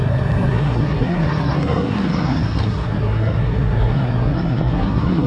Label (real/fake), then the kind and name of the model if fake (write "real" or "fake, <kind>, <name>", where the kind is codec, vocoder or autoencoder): fake, codec, SNAC